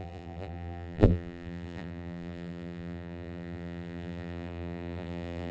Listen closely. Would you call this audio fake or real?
fake